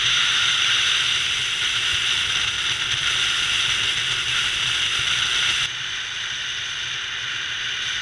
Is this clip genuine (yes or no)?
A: yes